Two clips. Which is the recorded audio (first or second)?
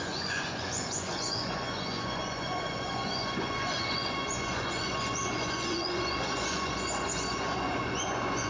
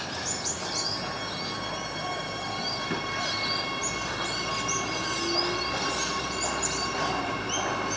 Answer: second